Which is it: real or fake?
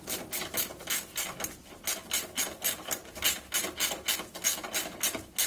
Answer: real